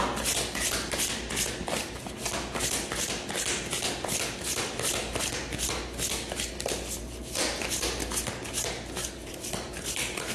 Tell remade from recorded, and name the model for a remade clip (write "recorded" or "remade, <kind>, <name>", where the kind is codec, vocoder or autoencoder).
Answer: recorded